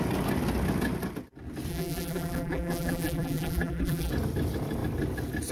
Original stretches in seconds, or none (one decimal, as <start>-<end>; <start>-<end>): 0.0-1.7; 4.1-5.5